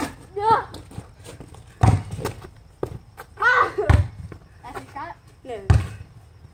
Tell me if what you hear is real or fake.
real